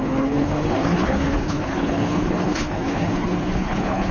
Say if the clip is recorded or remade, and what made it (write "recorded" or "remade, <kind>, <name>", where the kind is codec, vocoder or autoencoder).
remade, codec, HILCodec